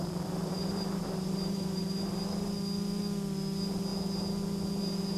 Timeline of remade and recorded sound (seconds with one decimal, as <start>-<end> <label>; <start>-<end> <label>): 0.0-1.8 remade; 1.8-5.2 recorded